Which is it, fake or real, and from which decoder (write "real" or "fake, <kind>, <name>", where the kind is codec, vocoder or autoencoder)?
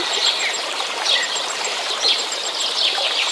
fake, vocoder, BigVGAN v2